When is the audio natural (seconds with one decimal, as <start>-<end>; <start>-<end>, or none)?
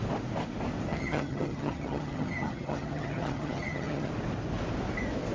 0.0-0.9; 4.1-5.3